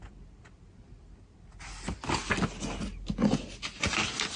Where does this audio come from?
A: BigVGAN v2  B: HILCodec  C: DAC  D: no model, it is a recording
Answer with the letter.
D